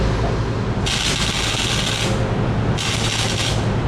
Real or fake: real